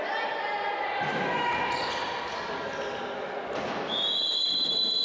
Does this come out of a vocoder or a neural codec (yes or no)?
no